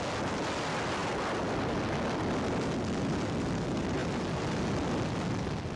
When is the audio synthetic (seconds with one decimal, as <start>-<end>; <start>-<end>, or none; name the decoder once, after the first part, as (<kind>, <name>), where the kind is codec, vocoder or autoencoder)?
none

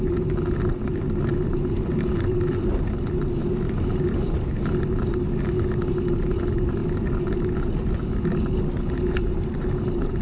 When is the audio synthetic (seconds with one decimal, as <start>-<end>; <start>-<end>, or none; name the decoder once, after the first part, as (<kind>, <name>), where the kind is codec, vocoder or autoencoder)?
none

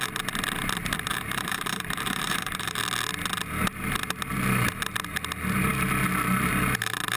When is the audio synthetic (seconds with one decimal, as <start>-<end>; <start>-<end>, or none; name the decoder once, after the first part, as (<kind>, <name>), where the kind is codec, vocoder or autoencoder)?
1.1-2.8 (vocoder, BigVGAN v2)